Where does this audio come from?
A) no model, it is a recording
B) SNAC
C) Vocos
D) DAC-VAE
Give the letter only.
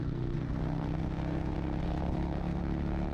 B